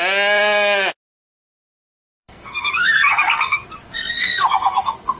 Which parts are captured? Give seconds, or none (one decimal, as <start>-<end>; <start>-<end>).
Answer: 0.0-2.0